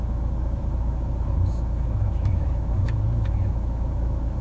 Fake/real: fake